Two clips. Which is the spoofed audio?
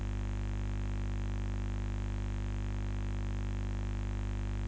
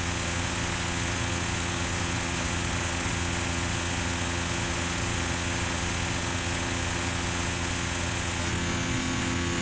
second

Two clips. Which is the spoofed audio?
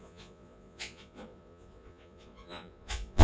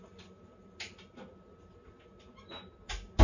first